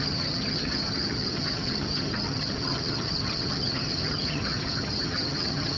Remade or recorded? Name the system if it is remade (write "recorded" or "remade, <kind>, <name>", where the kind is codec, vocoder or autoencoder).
remade, vocoder, HiFi-GAN